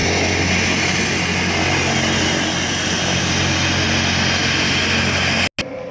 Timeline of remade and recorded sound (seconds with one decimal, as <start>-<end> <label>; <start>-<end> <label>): 0.0-5.9 recorded